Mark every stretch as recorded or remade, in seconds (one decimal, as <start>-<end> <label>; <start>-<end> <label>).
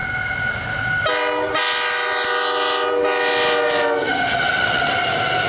0.0-4.0 recorded; 4.0-4.9 remade; 4.9-5.5 recorded